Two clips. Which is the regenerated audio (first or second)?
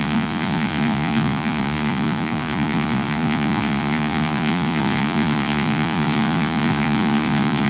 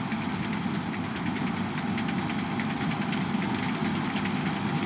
first